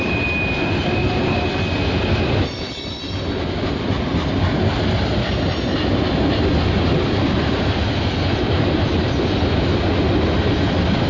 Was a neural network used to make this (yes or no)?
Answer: no